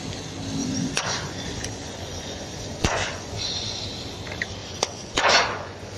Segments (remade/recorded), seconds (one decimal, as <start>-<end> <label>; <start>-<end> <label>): 0.0-0.6 recorded; 0.6-3.8 remade; 3.8-4.6 recorded; 4.6-6.0 remade